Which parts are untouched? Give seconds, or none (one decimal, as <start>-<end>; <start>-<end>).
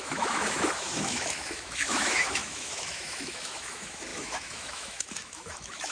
none